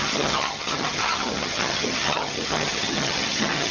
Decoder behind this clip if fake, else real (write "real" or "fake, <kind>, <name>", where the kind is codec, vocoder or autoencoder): fake, vocoder, HiFi-GAN